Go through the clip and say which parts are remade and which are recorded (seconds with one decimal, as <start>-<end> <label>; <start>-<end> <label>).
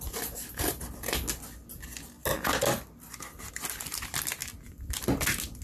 0.0-5.6 recorded